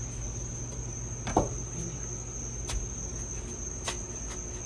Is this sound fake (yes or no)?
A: no